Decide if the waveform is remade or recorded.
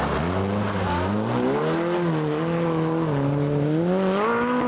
recorded